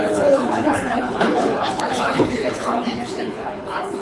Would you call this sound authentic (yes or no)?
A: no